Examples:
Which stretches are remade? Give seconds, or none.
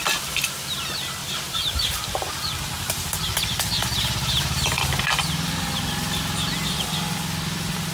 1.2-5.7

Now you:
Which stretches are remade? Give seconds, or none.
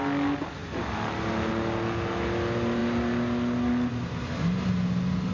none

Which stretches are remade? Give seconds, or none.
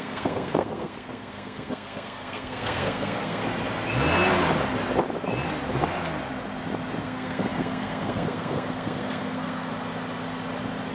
0.0-3.4; 7.0-9.7